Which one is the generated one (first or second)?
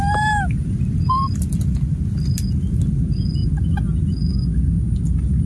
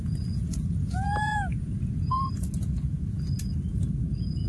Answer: second